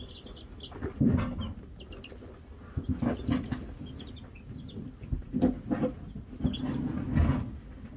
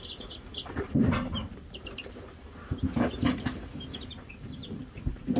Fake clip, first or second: second